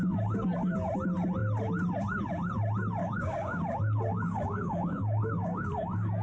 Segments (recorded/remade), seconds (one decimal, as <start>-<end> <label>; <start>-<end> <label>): 0.0-3.0 recorded; 3.0-3.6 remade; 3.6-4.1 recorded; 4.1-5.7 remade; 5.7-6.2 recorded